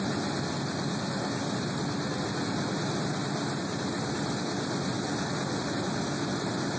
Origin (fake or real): real